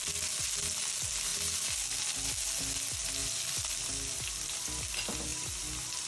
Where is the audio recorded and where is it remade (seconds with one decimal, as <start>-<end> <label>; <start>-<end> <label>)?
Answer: 0.0-3.2 recorded; 3.2-4.8 remade; 4.8-5.3 recorded; 5.3-6.1 remade